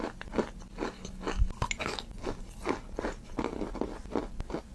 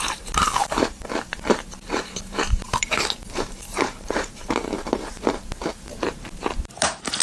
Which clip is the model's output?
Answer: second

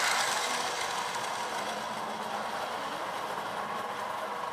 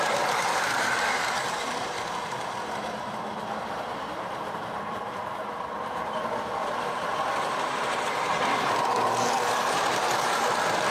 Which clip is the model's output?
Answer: second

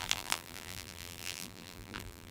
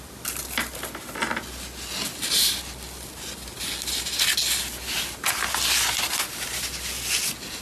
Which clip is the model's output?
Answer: first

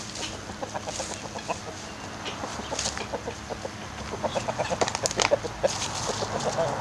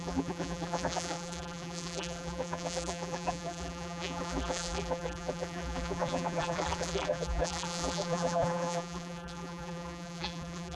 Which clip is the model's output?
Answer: second